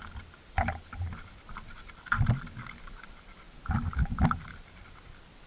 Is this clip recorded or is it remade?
recorded